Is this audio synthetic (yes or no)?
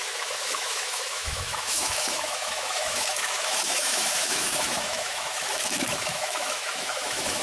yes